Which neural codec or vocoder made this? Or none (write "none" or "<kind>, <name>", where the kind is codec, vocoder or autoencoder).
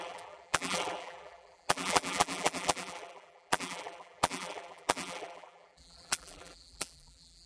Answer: vocoder, BigVGAN v2